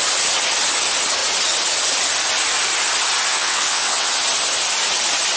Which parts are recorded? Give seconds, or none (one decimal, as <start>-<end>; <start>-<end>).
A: 0.0-3.3; 4.1-5.4